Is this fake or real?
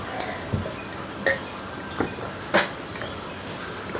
real